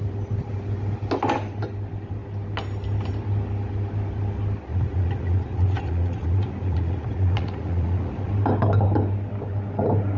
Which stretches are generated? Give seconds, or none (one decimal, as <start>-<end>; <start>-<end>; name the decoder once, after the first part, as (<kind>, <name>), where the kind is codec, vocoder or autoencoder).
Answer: 4.7-8.3 (vocoder, Vocos)